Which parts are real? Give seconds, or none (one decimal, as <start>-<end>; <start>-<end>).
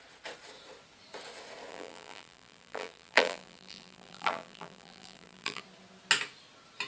0.0-1.7; 5.6-6.9